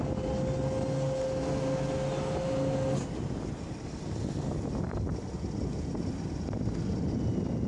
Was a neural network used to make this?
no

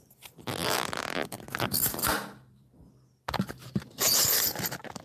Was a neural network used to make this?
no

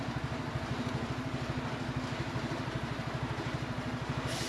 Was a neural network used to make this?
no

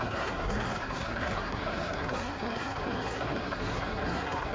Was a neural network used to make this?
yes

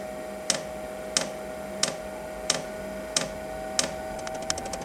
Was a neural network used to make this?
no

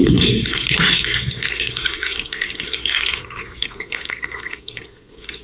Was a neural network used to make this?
yes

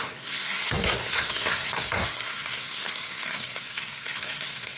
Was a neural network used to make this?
yes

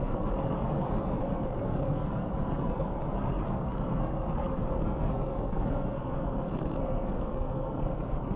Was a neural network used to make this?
yes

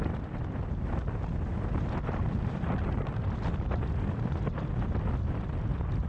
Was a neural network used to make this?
no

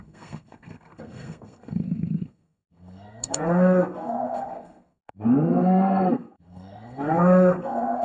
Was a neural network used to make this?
yes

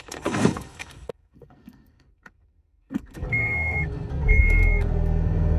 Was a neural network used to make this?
yes